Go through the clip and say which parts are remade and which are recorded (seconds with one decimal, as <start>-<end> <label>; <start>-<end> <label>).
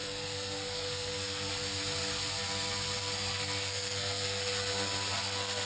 0.0-1.5 remade; 1.5-3.0 recorded; 3.0-4.4 remade; 4.4-5.2 recorded; 5.2-5.7 remade